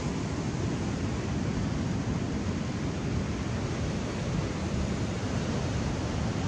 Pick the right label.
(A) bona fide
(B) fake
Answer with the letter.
A